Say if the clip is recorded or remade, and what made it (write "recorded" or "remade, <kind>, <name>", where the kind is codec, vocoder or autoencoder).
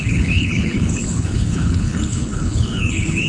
remade, codec, HILCodec